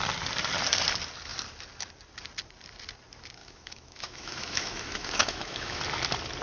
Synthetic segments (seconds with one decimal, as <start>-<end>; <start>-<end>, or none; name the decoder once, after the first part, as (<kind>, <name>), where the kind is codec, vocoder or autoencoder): 3.4-5.8 (autoencoder, DAC-VAE)